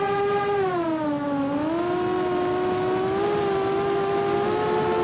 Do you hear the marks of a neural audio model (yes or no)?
no